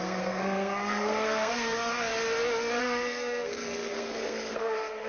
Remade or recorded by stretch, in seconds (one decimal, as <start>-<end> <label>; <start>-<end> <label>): 0.0-2.1 remade; 2.1-2.8 recorded; 2.8-5.1 remade